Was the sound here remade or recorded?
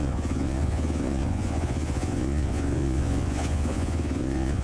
remade